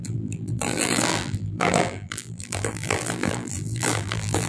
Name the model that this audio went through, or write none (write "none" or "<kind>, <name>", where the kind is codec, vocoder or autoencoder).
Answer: vocoder, BigVGAN v2